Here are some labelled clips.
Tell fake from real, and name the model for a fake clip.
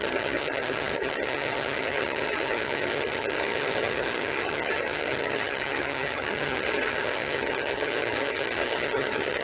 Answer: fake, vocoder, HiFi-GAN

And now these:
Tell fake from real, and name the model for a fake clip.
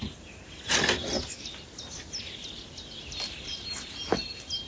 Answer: real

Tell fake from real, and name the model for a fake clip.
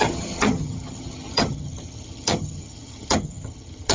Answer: fake, vocoder, HiFi-GAN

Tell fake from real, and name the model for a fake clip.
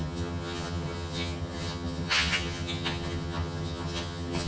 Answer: fake, vocoder, HiFi-GAN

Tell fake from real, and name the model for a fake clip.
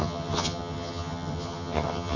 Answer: fake, vocoder, HiFi-GAN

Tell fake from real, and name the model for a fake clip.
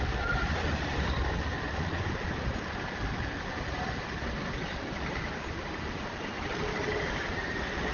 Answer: real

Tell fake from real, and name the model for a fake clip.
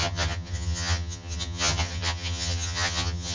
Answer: fake, vocoder, HiFi-GAN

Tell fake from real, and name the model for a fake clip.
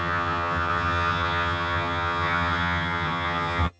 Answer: fake, vocoder, HiFi-GAN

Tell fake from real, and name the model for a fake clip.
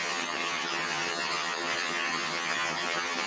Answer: fake, vocoder, HiFi-GAN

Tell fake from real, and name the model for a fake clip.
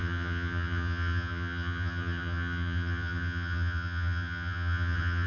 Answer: fake, vocoder, HiFi-GAN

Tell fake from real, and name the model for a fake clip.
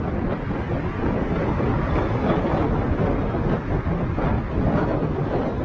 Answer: real